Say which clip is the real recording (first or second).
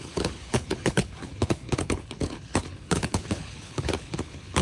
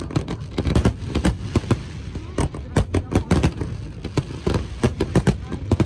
second